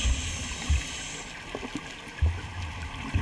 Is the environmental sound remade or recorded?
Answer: recorded